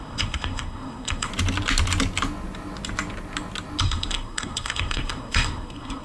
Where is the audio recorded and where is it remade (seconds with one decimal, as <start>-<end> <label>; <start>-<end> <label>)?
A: 0.0-1.3 remade; 1.3-3.8 recorded; 3.8-6.0 remade